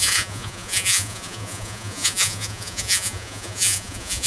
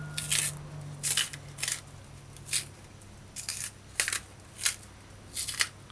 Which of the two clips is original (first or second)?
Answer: second